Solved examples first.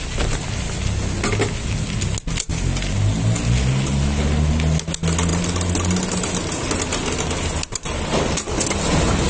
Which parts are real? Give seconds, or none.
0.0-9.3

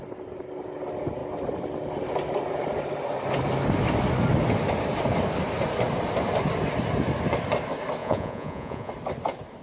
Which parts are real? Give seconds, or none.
0.0-8.0; 8.9-9.6

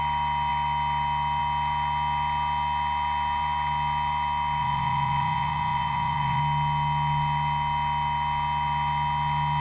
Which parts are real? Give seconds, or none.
0.0-4.6; 6.4-9.6

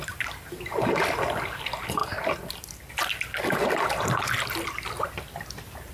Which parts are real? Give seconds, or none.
0.0-5.9

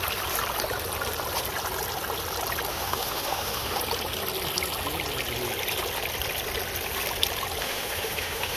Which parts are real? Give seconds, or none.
0.0-2.7; 3.8-7.6

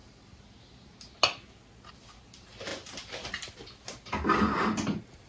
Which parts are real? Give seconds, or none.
0.0-5.3

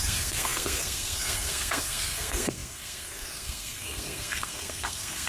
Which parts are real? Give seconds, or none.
none